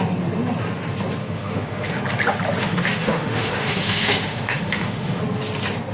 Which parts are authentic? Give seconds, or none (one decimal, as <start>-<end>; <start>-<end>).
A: 0.0-1.2; 2.0-2.6; 5.2-5.9